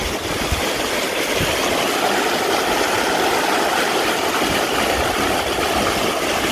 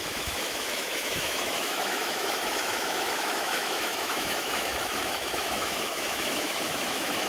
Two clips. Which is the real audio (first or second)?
first